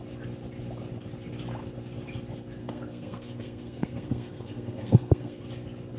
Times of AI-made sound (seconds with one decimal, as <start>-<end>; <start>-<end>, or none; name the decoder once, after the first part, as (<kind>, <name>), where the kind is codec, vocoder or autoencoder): 2.6-5.4 (codec, SNAC)